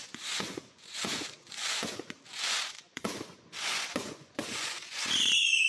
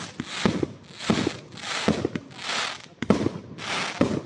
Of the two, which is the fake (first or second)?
first